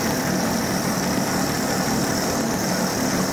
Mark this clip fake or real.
real